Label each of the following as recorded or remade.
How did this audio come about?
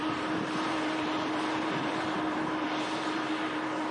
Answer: remade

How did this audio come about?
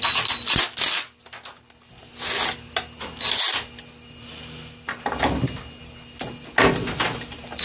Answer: recorded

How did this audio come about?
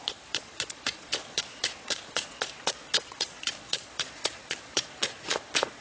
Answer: remade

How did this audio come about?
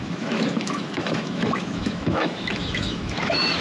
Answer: remade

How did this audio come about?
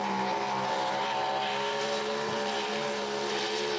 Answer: remade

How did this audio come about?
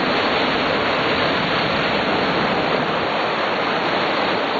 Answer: recorded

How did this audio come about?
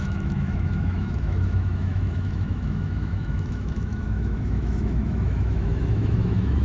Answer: remade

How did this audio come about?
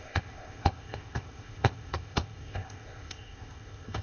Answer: remade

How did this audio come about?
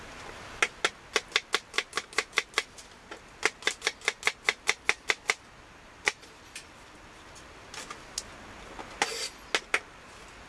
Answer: recorded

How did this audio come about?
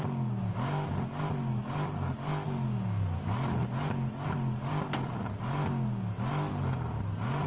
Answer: recorded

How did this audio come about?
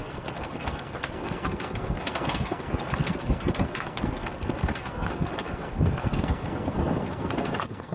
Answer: remade